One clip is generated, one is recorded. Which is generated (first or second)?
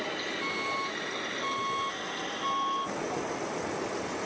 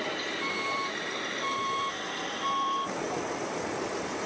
second